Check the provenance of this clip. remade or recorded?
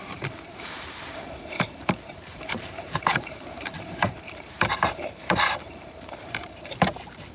remade